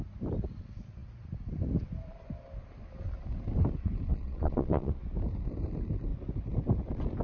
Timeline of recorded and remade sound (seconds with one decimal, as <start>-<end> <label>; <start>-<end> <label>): 0.0-4.1 recorded; 4.1-5.0 remade; 5.0-7.2 recorded